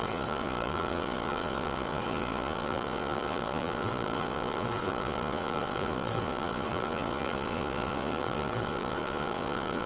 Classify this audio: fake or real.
fake